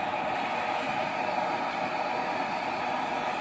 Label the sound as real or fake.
real